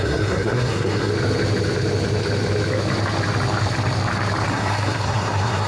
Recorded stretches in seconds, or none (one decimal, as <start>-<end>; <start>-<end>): 1.1-4.5